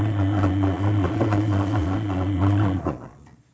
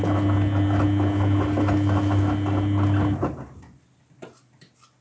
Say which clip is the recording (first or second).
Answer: second